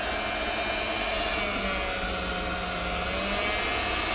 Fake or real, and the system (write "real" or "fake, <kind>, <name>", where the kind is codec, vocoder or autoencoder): real